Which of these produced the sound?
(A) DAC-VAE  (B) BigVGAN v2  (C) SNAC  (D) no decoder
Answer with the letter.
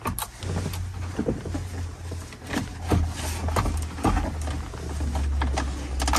D